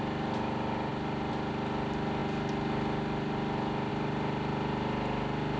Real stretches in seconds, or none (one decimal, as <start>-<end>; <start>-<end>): 0.0-5.6